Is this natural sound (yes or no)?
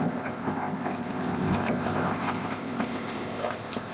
no